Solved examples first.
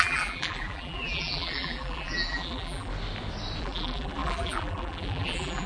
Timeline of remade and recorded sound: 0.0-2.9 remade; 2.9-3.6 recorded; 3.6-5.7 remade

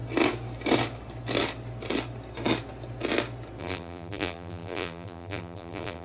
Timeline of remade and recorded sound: 0.0-3.6 recorded; 3.6-6.0 remade

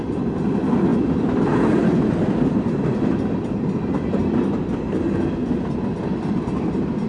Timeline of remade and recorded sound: 0.0-4.2 remade; 4.2-7.1 recorded

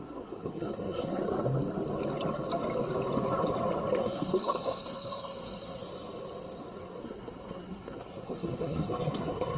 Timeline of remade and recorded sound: 0.0-1.2 remade; 1.2-4.0 recorded; 4.0-5.8 remade; 5.8-7.0 recorded; 7.0-9.6 remade

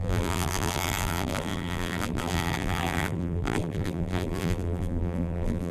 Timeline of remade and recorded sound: 0.0-5.7 remade

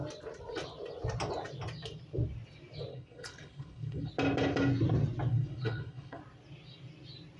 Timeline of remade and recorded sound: 0.0-2.9 recorded; 2.9-4.1 remade; 4.1-5.3 recorded; 5.3-6.2 remade; 6.2-7.4 recorded

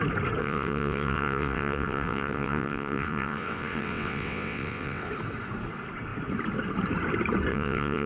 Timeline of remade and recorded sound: 0.0-0.4 recorded; 0.4-5.1 remade; 5.1-7.5 recorded; 7.5-8.1 remade